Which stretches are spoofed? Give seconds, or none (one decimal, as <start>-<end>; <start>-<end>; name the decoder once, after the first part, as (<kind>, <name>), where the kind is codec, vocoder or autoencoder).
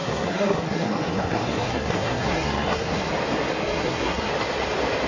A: 0.0-3.1 (codec, SNAC); 3.6-4.3